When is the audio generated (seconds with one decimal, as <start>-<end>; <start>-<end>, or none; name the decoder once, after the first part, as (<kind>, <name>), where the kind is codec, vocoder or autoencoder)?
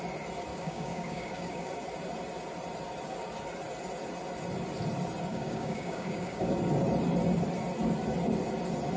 0.5-1.7 (codec, DAC); 5.3-6.5